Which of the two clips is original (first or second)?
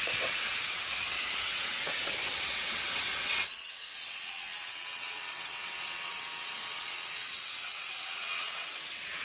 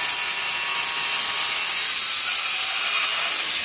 second